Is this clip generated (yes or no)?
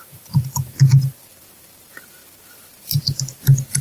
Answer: yes